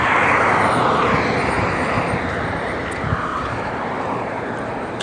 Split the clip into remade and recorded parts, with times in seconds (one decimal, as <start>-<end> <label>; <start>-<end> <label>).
0.0-3.3 recorded; 3.3-5.0 remade